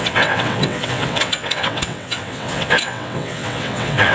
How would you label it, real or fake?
fake